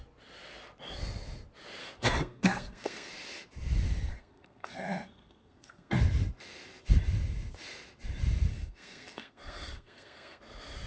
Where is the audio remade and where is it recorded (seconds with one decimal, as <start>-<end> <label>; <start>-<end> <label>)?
0.0-1.8 recorded; 1.8-3.1 remade; 3.1-4.1 recorded; 4.1-6.0 remade; 6.0-8.5 recorded; 8.5-10.4 remade; 10.4-10.9 recorded

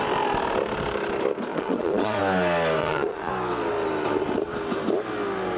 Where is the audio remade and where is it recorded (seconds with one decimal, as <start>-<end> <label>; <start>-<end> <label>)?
0.0-1.5 recorded; 1.5-2.2 remade; 2.2-2.8 recorded; 2.8-3.3 remade; 3.3-5.6 recorded

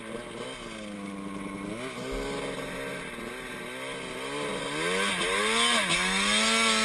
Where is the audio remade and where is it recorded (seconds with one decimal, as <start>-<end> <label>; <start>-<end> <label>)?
0.0-6.8 recorded

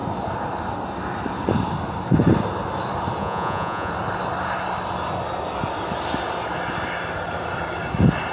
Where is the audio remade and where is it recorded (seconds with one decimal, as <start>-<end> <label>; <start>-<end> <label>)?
0.0-3.2 recorded; 3.2-3.9 remade; 3.9-8.3 recorded

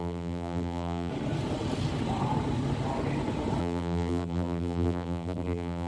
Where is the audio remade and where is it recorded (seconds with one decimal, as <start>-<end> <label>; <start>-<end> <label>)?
0.0-1.1 remade; 1.1-3.6 recorded; 3.6-5.9 remade

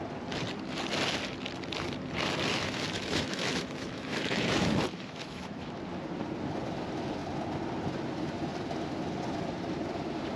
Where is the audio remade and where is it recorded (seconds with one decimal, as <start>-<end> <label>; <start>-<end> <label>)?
0.0-2.5 recorded; 2.5-5.8 remade; 5.8-10.4 recorded

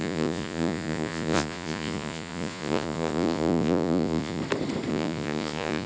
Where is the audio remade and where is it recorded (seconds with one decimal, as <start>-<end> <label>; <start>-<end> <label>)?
0.0-4.4 remade; 4.4-4.9 recorded; 4.9-5.9 remade